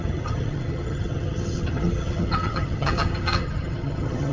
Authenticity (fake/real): fake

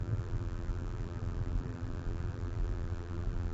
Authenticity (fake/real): fake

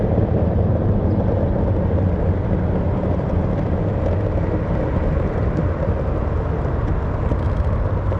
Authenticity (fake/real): real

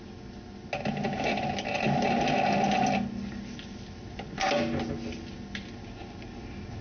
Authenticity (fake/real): real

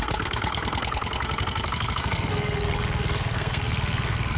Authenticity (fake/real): fake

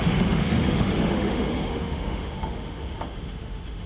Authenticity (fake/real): fake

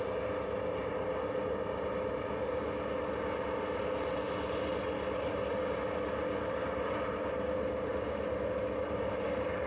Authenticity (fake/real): real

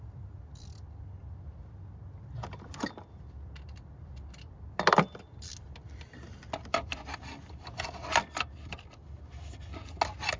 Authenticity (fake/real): real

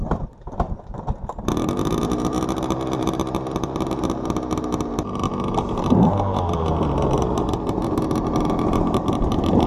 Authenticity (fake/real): fake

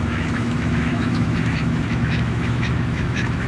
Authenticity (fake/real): fake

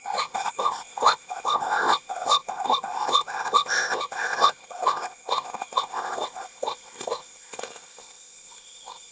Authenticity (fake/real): fake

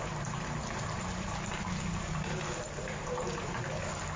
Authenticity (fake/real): fake